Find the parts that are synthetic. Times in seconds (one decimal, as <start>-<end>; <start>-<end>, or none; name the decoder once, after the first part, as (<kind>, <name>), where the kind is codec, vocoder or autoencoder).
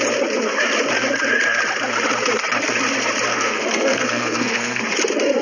3.3-4.8 (codec, SNAC)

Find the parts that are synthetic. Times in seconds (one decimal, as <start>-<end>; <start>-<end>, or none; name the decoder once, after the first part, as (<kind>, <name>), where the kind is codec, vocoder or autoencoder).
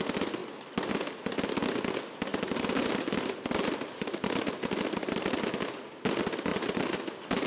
2.3-5.3 (vocoder, BigVGAN v2); 6.5-7.5